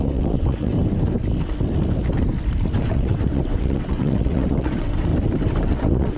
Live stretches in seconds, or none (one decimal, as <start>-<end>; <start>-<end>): 0.7-2.8; 5.1-5.6